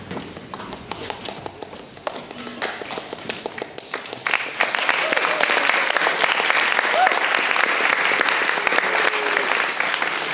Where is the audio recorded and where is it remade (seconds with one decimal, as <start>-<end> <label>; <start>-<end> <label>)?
0.0-0.4 recorded; 0.4-1.2 remade; 1.2-10.3 recorded